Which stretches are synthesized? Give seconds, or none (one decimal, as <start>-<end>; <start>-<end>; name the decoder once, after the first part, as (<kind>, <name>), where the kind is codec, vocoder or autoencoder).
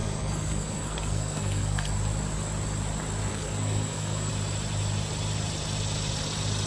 0.0-1.9 (codec, SNAC); 3.3-4.3